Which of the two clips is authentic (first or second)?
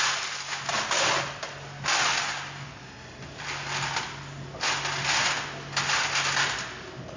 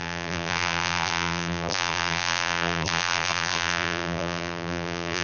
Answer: first